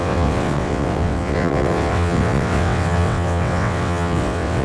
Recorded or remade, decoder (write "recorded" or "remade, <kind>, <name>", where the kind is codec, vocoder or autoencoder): remade, vocoder, WaveNeXt